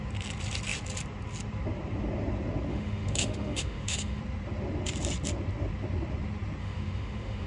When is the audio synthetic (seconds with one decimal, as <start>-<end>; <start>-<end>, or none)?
2.7-4.2; 6.6-7.5

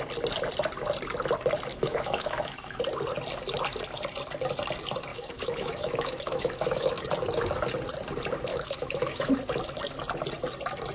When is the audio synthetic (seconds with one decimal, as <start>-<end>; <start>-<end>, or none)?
1.7-2.8; 5.1-7.0; 8.5-9.3